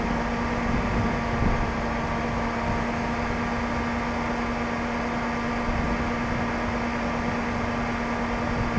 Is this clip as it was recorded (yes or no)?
yes